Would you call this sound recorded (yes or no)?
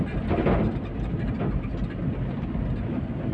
yes